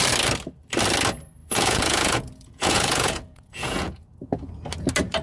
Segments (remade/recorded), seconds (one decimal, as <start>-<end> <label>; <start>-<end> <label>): 0.0-1.4 recorded; 1.4-4.5 remade; 4.5-5.2 recorded